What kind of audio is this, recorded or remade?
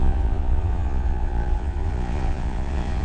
remade